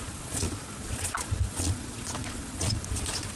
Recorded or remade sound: remade